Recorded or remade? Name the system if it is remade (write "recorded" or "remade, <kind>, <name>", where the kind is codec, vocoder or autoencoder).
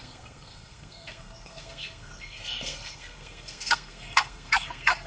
remade, codec, SNAC